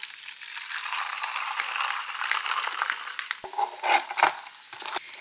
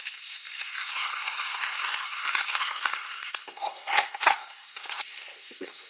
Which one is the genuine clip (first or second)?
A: first